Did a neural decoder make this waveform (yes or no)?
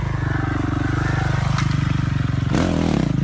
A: no